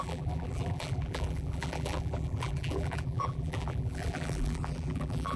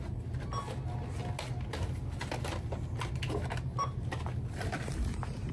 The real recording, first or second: second